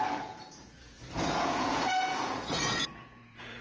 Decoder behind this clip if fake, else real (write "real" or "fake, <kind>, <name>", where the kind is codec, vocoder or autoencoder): fake, vocoder, Vocos